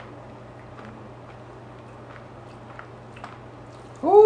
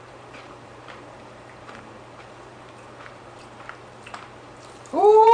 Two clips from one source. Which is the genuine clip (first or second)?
first